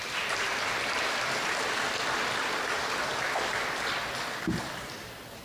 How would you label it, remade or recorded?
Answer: remade